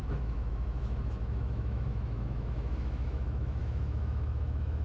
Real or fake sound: fake